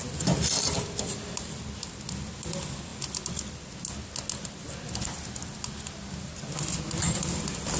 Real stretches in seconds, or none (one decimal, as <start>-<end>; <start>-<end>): 0.0-7.8